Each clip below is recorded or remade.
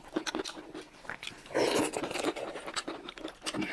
recorded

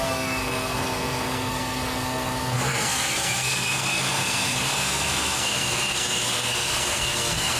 remade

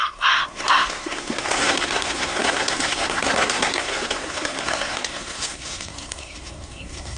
remade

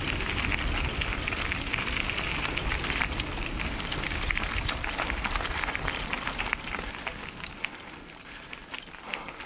recorded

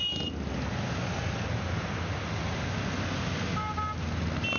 recorded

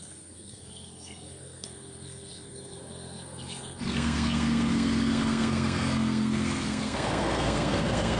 remade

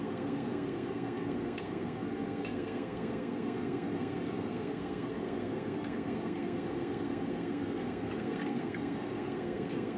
remade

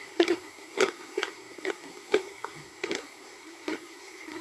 remade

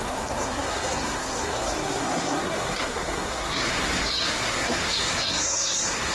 remade